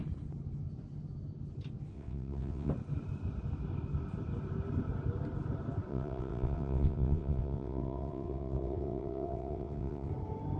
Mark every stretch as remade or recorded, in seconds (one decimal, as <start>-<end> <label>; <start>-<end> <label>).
0.0-1.9 recorded; 1.9-2.7 remade; 2.7-5.9 recorded; 5.9-10.1 remade; 10.1-10.6 recorded